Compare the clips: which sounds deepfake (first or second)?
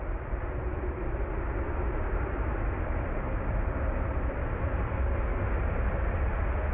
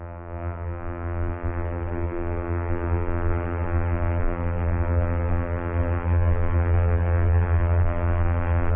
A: second